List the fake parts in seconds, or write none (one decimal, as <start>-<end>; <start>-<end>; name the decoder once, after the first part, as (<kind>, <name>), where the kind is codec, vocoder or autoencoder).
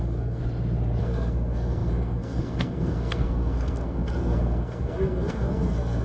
0.0-0.4 (codec, SNAC); 1.0-6.0